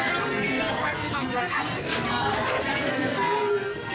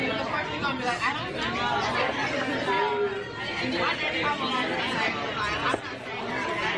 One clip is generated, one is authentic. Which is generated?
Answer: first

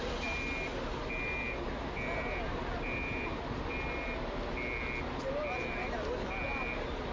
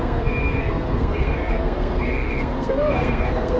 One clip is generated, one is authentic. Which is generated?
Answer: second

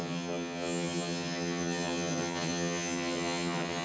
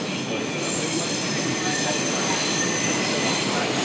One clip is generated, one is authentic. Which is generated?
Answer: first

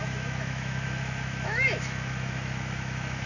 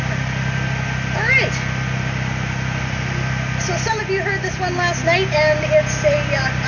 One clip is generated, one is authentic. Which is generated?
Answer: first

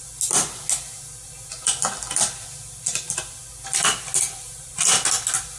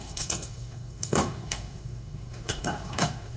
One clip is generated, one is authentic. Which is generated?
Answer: second